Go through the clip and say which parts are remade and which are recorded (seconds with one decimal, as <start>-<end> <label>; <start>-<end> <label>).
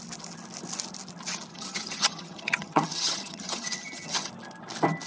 0.0-1.5 recorded; 1.5-4.3 remade; 4.3-5.1 recorded